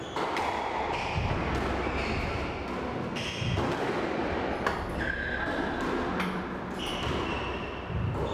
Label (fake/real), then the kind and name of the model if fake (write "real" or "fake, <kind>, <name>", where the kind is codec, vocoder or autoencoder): real